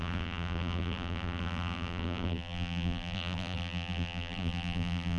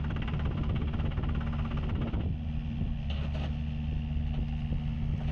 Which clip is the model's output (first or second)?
first